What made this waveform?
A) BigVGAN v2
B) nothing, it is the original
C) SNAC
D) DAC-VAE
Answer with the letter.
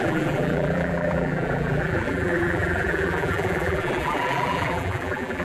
A